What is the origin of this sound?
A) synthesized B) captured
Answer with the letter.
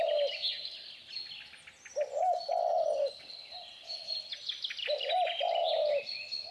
B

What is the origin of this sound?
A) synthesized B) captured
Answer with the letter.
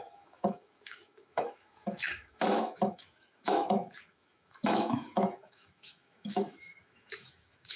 A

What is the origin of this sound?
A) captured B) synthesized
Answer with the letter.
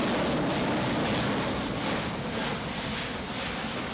A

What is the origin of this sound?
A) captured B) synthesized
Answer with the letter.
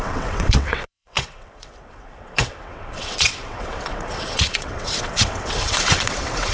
B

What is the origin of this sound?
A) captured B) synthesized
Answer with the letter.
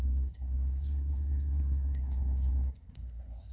B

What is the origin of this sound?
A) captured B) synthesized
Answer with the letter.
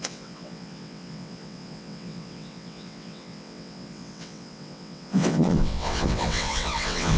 B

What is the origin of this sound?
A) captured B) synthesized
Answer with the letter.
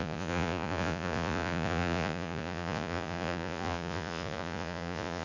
B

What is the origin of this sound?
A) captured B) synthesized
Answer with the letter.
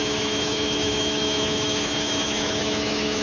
B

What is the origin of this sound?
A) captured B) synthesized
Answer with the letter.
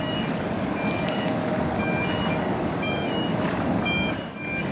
B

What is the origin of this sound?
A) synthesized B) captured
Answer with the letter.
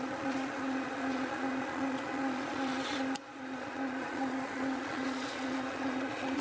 A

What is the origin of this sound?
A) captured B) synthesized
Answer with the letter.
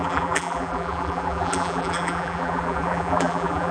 B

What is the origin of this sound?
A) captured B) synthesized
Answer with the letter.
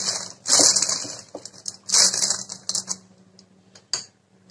A